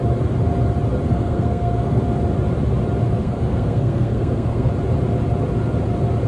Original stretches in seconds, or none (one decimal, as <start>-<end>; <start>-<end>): 0.0-1.1; 2.0-3.2; 4.7-6.3